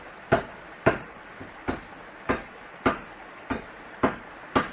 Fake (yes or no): no